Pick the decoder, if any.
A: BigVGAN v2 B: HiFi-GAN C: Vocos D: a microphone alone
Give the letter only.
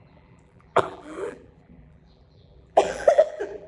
A